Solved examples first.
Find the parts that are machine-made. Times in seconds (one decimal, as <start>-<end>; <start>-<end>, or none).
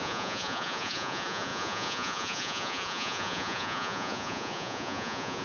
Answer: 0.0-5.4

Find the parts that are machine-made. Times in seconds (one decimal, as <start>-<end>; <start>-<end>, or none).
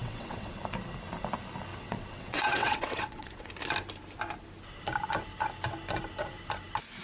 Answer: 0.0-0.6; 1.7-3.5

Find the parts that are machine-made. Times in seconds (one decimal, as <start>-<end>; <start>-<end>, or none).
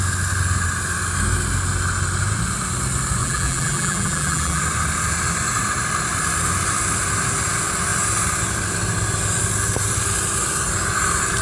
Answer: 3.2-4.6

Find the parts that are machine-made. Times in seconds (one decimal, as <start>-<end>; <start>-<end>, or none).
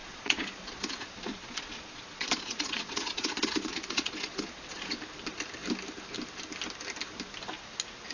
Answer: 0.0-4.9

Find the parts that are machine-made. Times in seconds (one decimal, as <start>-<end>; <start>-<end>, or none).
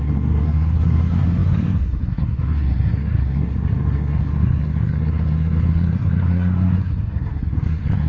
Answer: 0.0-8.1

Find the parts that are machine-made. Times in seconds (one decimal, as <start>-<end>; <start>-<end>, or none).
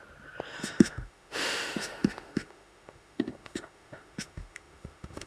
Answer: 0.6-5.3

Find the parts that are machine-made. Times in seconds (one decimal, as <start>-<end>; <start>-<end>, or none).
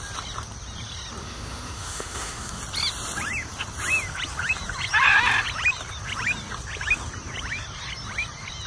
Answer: 1.2-2.6